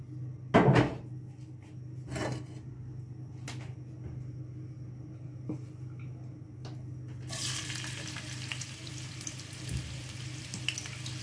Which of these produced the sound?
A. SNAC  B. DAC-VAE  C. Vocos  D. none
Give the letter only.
D